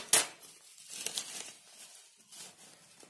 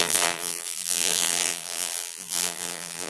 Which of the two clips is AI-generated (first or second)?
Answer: second